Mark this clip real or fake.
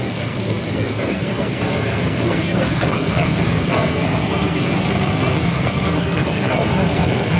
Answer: fake